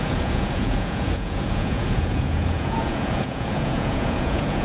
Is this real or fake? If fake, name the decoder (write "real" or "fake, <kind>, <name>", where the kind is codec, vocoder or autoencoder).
fake, vocoder, Vocos